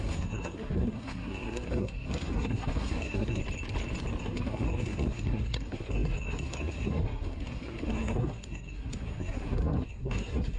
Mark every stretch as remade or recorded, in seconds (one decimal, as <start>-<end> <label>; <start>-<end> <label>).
0.0-3.4 remade; 3.4-4.2 recorded; 4.2-10.6 remade